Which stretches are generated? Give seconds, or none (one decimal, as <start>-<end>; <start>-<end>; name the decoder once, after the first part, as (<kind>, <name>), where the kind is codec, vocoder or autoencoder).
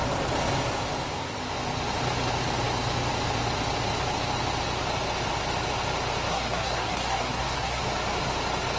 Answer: 6.3-7.8 (codec, SNAC)